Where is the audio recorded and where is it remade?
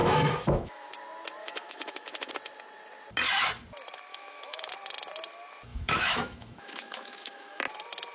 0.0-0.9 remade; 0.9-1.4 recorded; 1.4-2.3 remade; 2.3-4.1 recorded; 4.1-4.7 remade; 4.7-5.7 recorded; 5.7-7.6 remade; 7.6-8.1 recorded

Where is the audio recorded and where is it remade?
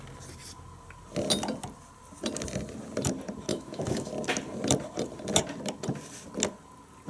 0.0-3.5 recorded; 3.5-4.1 remade; 4.1-7.1 recorded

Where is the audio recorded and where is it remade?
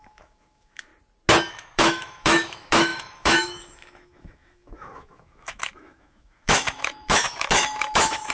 0.0-0.9 remade; 0.9-1.5 recorded; 1.5-8.3 remade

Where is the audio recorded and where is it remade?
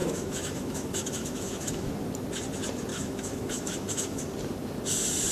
0.0-1.9 remade; 1.9-2.9 recorded; 2.9-4.2 remade; 4.2-5.3 recorded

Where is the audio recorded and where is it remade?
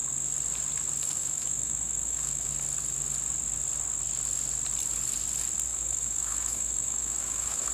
0.0-1.2 recorded; 1.2-2.5 remade; 2.5-5.7 recorded; 5.7-7.7 remade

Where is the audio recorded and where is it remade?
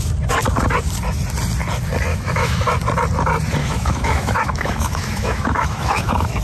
0.0-2.1 recorded; 2.1-2.6 remade; 2.6-3.6 recorded; 3.6-6.4 remade